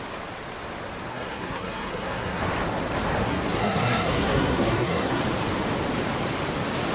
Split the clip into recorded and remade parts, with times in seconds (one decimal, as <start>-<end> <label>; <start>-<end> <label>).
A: 0.0-1.1 recorded; 1.1-2.4 remade; 2.4-3.2 recorded; 3.2-5.2 remade; 5.2-6.9 recorded